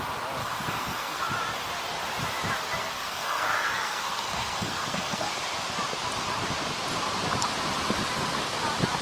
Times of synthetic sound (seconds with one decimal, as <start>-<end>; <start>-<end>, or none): 0.4-1.2; 2.8-5.3